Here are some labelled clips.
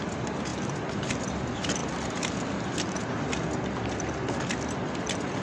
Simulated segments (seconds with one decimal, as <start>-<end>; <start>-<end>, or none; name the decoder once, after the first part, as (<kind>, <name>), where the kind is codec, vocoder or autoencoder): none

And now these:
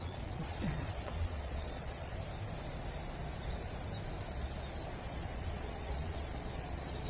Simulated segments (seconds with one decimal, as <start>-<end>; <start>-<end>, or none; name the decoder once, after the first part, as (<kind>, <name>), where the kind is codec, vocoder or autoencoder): 0.0-2.1 (vocoder, Vocos); 4.9-7.1

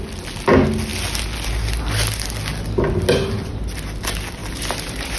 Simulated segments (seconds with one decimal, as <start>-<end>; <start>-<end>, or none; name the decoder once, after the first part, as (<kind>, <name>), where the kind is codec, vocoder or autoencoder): 4.4-5.2 (vocoder, BigVGAN v2)

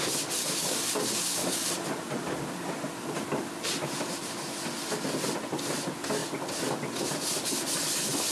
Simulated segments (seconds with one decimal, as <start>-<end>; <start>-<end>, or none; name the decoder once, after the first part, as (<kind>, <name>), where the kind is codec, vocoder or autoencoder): 0.4-1.7 (codec, DAC)

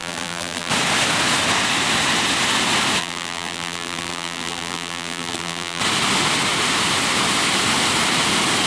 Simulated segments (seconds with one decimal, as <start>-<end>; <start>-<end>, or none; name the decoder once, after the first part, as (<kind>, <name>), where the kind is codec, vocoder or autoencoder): 0.0-0.7 (vocoder, BigVGAN v2); 3.0-5.8